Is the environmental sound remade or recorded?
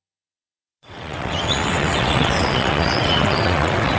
remade